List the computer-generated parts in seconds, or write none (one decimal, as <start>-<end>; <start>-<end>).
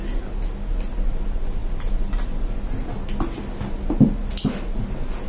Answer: none